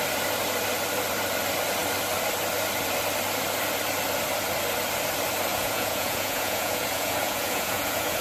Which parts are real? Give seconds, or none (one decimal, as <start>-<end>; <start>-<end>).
0.0-5.5